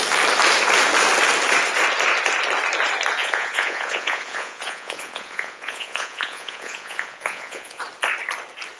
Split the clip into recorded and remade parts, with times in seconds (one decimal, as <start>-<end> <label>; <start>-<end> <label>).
0.0-3.2 recorded; 3.2-7.8 remade; 7.8-8.8 recorded